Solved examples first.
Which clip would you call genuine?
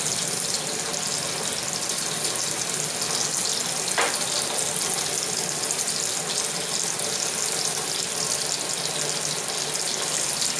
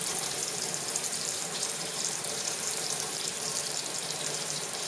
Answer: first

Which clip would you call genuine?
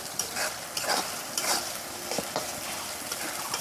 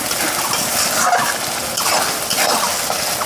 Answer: second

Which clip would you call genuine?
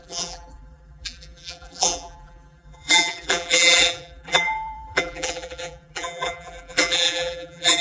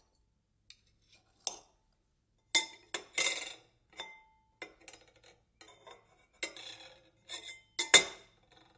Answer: second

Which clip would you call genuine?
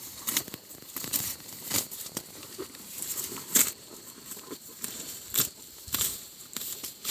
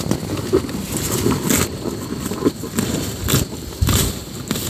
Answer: second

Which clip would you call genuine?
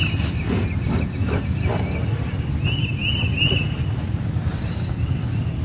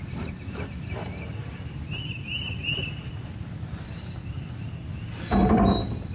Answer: first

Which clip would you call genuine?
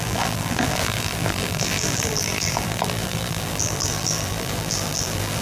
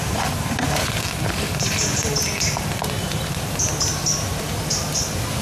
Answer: second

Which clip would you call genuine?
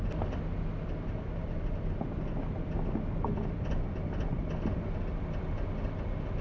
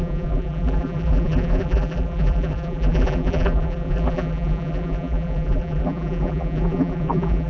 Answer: first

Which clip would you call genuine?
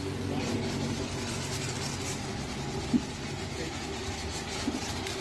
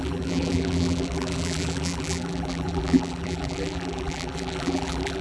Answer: first